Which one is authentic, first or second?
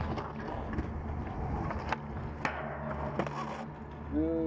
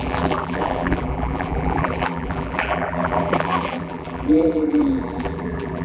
first